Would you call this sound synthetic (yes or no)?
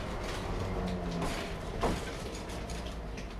no